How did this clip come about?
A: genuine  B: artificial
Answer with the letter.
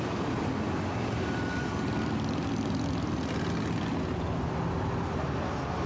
A